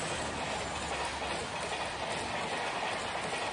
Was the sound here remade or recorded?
recorded